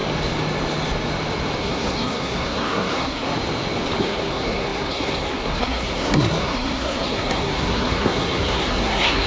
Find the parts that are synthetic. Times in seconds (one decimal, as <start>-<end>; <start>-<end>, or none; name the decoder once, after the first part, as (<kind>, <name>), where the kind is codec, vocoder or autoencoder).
1.6-3.3 (codec, SNAC); 4.0-9.3